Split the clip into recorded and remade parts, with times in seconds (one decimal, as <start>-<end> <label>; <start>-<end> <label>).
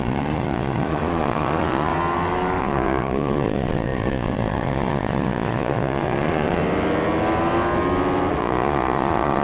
0.0-1.9 remade; 1.9-2.6 recorded; 2.6-6.6 remade; 6.6-8.4 recorded; 8.4-9.4 remade